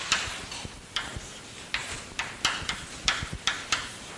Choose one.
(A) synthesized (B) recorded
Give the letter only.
B